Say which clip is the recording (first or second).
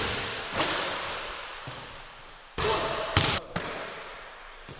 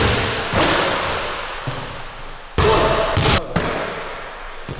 second